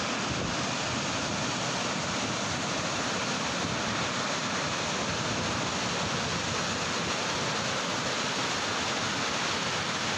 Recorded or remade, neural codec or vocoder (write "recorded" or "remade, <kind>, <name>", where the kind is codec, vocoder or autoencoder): recorded